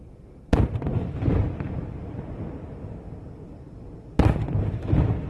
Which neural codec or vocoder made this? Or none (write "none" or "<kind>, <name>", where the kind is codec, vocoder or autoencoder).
none